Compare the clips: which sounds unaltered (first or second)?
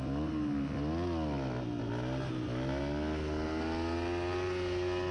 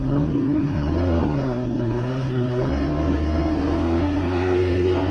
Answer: first